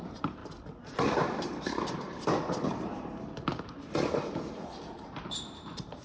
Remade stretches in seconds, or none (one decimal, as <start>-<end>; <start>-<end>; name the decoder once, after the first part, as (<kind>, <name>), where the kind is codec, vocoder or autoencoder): 0.0-0.4 (vocoder, BigVGAN v2); 1.4-2.1; 4.9-6.0